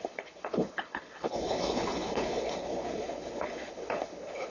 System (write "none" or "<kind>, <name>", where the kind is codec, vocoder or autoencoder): codec, HILCodec